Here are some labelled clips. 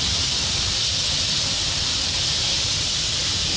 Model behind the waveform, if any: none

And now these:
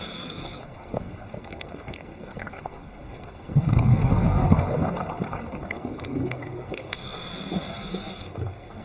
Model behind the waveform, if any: codec, SNAC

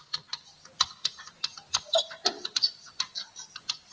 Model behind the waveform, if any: none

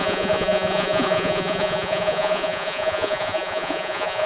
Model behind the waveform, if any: vocoder, Vocos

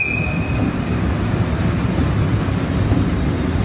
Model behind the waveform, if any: none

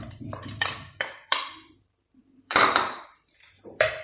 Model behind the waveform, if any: vocoder, BigVGAN v2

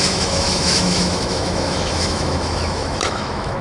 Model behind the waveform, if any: autoencoder, DAC-VAE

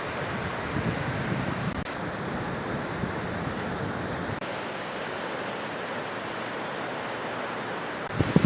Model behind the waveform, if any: none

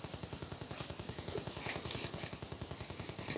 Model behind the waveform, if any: none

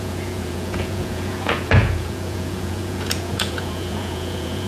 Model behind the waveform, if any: vocoder, Vocos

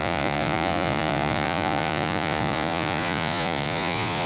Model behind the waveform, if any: vocoder, Vocos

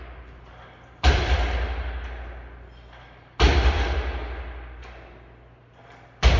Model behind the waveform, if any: none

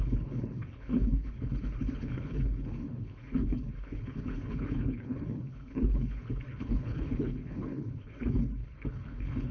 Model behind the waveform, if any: codec, HILCodec